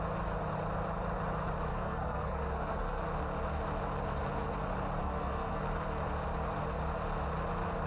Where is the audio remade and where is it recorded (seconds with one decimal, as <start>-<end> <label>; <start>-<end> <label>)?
0.0-1.7 recorded; 1.7-3.0 remade; 3.0-5.0 recorded; 5.0-5.6 remade; 5.6-7.9 recorded